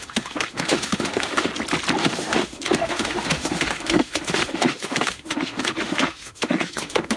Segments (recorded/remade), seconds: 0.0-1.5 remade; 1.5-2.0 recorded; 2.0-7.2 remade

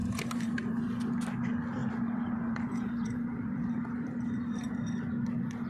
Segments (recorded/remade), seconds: 0.0-0.8 remade; 0.8-1.8 recorded; 1.8-4.7 remade; 4.7-5.7 recorded

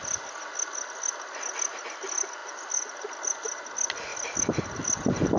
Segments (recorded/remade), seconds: 0.0-5.4 recorded

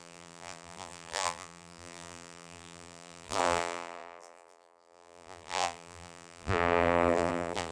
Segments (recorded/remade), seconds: 0.0-7.7 remade

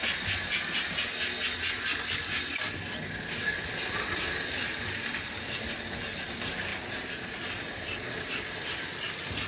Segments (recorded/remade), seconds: 0.0-9.5 recorded

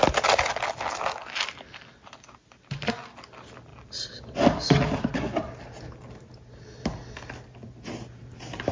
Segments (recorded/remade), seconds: 0.0-2.0 recorded; 2.0-2.9 remade; 2.9-8.7 recorded

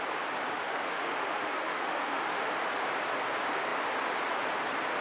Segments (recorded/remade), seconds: 0.0-0.5 recorded; 0.5-2.5 remade; 2.5-5.0 recorded

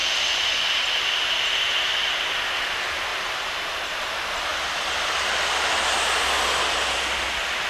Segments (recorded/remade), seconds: 0.0-0.5 remade; 0.5-3.1 recorded; 3.1-4.0 remade; 4.0-7.7 recorded